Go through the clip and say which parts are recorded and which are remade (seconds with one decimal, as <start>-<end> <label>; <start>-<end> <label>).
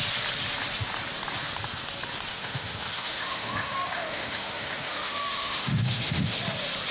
0.0-2.3 recorded; 2.3-6.4 remade; 6.4-6.9 recorded